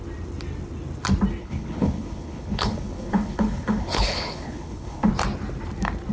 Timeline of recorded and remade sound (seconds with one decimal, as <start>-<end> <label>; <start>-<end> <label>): 0.0-1.4 recorded; 1.4-5.1 remade; 5.1-6.1 recorded